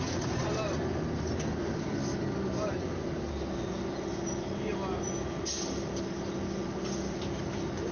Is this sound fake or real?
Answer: real